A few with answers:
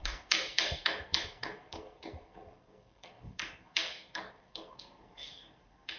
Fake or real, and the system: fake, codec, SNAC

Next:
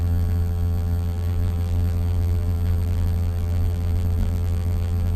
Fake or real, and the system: fake, vocoder, BigVGAN v2